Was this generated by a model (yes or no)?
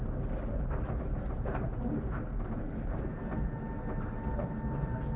no